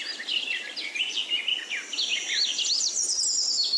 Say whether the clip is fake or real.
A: real